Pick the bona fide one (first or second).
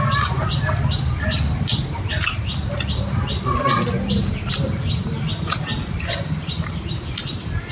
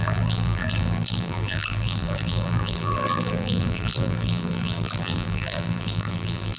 first